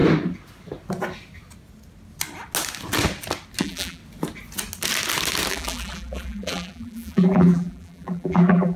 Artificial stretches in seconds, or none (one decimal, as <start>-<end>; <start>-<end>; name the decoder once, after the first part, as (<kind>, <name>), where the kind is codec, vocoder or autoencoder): 3.6-4.0 (vocoder, BigVGAN v2); 5.5-8.8